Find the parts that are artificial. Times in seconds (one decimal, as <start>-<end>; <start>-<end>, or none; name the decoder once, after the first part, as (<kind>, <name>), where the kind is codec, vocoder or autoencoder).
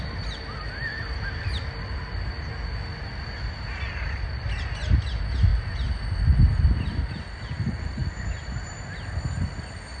none